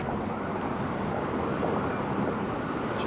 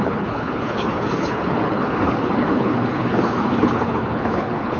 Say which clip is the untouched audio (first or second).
first